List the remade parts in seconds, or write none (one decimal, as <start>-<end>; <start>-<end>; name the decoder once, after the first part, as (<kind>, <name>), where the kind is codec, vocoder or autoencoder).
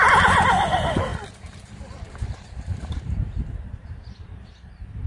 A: 0.0-5.1 (vocoder, BigVGAN v2)